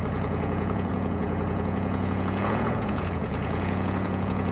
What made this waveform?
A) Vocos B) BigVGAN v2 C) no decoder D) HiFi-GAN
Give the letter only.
A